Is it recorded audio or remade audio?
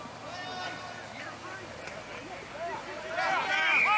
recorded